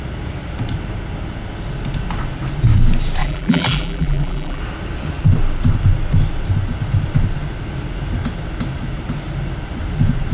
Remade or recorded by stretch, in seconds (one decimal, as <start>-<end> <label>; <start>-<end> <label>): 0.0-3.2 recorded; 3.2-4.6 remade; 4.6-10.3 recorded

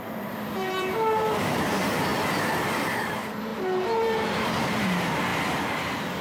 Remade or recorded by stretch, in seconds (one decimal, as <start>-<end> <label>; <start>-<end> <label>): 0.0-2.1 remade; 2.1-2.7 recorded; 2.7-5.3 remade; 5.3-6.2 recorded

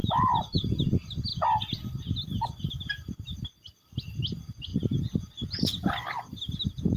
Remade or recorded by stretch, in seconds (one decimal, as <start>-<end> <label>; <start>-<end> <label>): 0.0-0.7 remade; 0.7-7.0 recorded